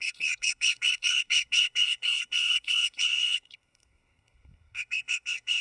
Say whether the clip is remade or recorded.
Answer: remade